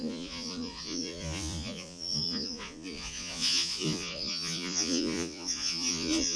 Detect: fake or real fake